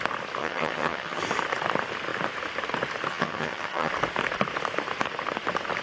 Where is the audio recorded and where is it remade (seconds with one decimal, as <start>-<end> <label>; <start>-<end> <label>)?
0.0-0.4 recorded; 0.4-1.2 remade; 1.2-3.1 recorded; 3.1-3.9 remade; 3.9-5.8 recorded